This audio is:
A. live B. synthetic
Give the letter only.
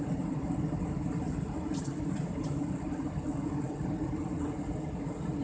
A